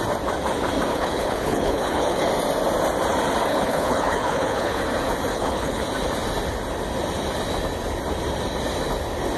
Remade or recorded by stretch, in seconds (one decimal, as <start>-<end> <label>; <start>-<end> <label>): 0.0-0.9 recorded; 0.9-2.3 remade; 2.3-3.5 recorded; 3.5-4.8 remade; 4.8-5.3 recorded; 5.3-5.8 remade; 5.8-9.4 recorded